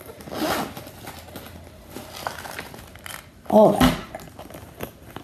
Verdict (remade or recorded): recorded